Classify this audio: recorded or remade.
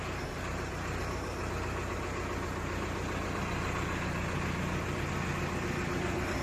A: recorded